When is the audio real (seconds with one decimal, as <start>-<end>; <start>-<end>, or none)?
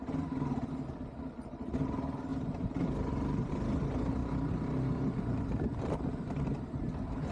0.0-2.3; 3.5-4.2; 6.5-7.3